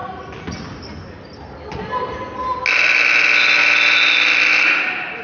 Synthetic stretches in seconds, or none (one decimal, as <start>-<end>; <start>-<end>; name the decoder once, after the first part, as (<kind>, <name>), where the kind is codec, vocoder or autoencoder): none